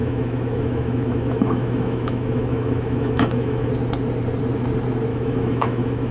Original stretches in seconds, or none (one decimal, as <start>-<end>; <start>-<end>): 3.7-5.1